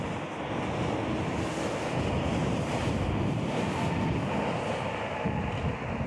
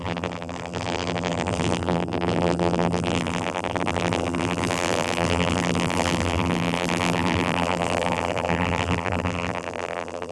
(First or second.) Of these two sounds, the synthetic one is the second